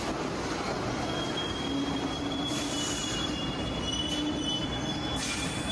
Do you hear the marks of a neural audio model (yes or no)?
no